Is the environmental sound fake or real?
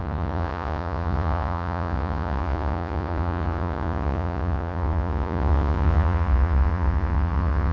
fake